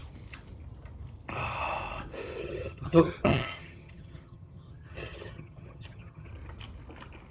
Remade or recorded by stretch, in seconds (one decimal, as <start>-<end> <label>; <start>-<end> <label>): 0.0-2.4 recorded; 2.4-6.3 remade; 6.3-7.3 recorded